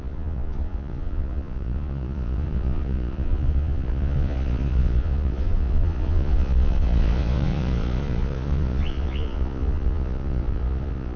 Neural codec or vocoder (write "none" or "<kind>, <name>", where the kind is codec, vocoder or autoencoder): vocoder, Vocos